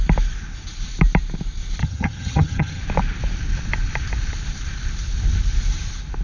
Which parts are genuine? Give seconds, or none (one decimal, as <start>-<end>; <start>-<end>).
0.0-1.8; 2.8-6.2